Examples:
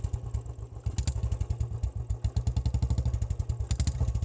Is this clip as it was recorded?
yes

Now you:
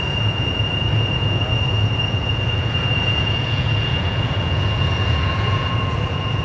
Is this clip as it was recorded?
no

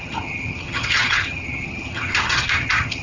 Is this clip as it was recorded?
no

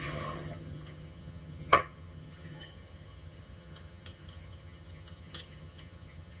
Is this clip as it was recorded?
no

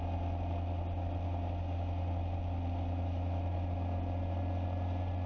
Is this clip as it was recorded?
yes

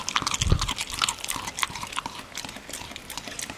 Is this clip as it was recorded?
yes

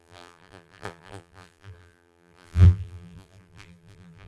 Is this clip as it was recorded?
no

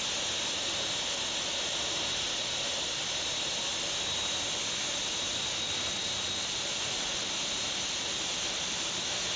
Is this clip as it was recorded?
yes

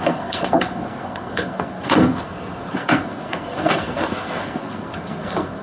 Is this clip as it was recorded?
no